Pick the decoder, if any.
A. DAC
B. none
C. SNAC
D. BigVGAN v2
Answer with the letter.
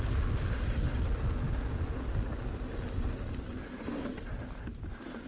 B